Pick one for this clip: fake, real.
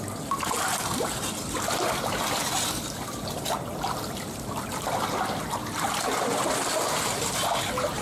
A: real